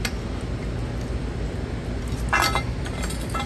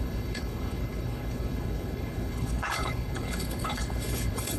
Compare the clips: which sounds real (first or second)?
first